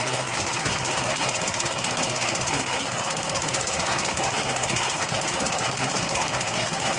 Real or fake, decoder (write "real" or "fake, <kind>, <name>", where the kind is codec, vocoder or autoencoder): fake, codec, SNAC